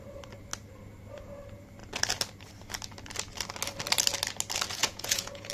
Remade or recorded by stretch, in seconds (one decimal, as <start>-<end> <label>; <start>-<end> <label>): 0.0-4.8 recorded; 4.8-5.5 remade